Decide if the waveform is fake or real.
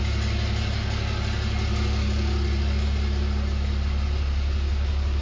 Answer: real